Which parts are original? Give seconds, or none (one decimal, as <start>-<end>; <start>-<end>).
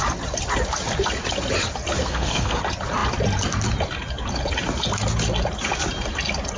0.0-2.0; 2.6-6.6